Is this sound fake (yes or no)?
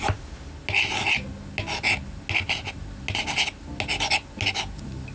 no